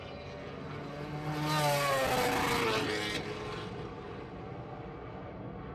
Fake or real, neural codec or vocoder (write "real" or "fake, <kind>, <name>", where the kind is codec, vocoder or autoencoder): real